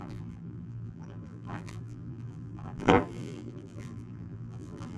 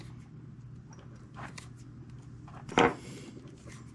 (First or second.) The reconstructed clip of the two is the first